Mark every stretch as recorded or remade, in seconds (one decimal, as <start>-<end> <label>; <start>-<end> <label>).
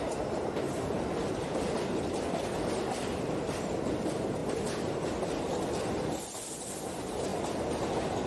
0.0-8.3 recorded